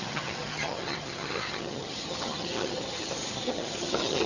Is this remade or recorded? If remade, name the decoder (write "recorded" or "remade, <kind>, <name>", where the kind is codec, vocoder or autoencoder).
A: remade, vocoder, HiFi-GAN